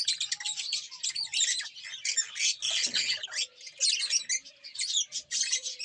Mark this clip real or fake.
real